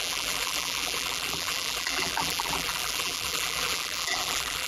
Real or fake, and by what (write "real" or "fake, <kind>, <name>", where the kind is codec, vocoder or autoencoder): fake, vocoder, BigVGAN v2